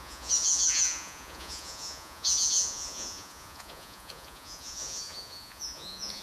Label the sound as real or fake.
fake